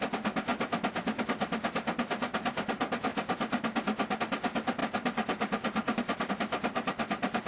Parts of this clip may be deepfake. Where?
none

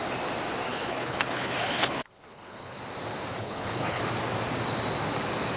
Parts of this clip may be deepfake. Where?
0.7-2.8; 3.4-4.0